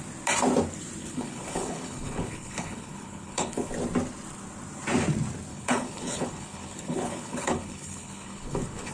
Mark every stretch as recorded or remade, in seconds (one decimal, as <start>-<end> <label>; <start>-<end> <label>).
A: 0.0-1.0 recorded; 1.0-3.7 remade; 3.7-5.5 recorded; 5.5-8.9 remade